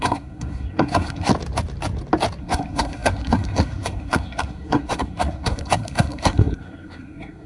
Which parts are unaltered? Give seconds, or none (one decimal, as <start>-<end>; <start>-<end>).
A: 1.3-2.4

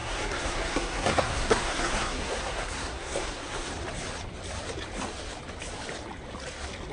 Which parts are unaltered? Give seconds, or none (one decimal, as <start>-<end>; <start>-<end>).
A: 3.7-6.9